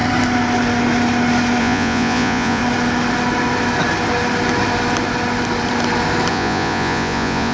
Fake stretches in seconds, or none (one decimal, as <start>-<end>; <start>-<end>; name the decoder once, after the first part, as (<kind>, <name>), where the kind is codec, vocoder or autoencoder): 1.6-2.6 (vocoder, Vocos); 6.3-7.5